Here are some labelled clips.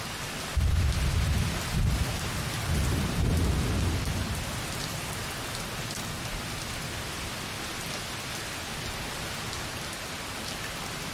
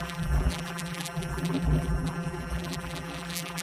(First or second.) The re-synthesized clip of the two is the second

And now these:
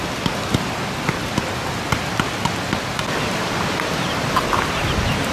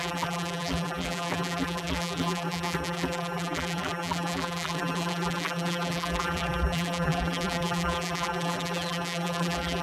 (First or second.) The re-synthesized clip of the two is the second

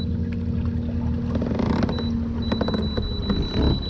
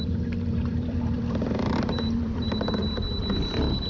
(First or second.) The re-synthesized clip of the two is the second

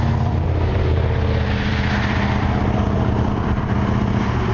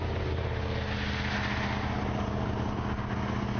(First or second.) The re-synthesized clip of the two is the first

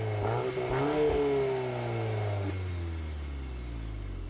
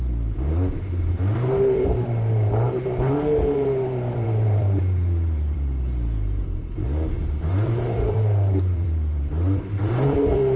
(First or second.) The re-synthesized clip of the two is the second